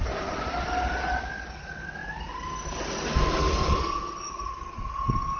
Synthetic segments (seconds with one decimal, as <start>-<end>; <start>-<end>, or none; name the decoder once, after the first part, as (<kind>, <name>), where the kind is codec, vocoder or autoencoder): none